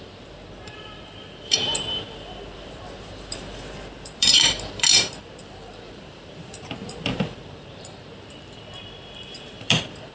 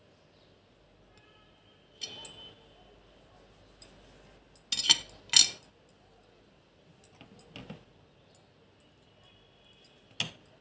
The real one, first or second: second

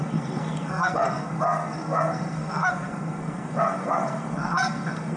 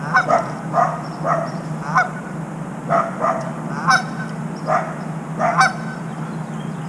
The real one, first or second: second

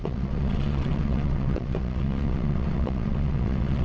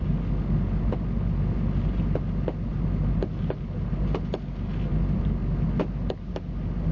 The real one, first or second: second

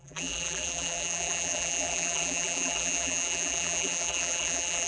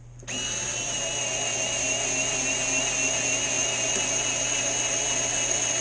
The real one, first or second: second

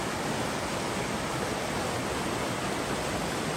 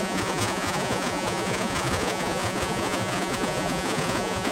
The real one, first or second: first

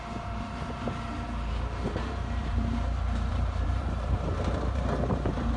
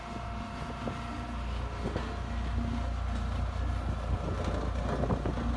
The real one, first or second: second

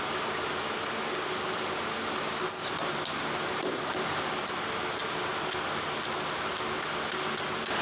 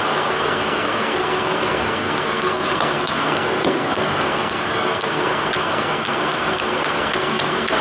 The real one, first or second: first